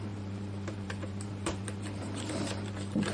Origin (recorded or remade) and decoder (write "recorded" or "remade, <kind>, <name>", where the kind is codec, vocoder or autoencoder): remade, vocoder, BigVGAN v2